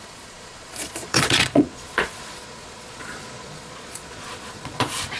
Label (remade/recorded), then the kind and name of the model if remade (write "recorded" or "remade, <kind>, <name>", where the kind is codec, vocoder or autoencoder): remade, vocoder, Vocos